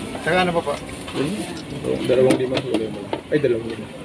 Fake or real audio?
real